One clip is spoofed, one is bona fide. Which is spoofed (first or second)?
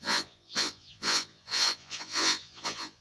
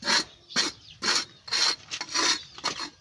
first